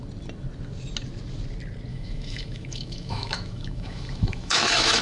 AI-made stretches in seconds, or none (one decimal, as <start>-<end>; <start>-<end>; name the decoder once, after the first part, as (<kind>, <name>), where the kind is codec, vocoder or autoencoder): 1.9-5.0 (autoencoder, DAC-VAE)